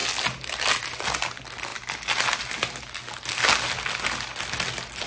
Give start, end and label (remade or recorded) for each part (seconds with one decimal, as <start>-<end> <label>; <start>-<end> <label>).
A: 0.0-5.1 recorded